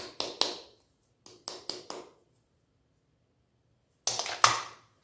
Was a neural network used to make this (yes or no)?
no